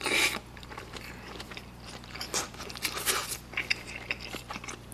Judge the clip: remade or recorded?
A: recorded